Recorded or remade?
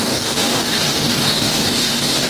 remade